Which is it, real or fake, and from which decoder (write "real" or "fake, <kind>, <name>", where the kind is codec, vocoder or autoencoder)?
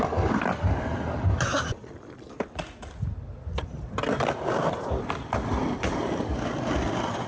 real